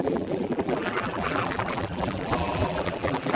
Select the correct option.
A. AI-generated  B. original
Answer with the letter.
A